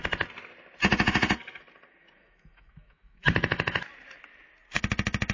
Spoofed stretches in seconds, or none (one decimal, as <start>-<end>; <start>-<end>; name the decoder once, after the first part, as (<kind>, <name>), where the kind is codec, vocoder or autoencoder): 2.0-3.8 (autoencoder, DAC-VAE)